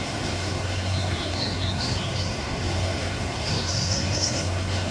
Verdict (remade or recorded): remade